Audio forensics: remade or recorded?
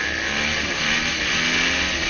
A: recorded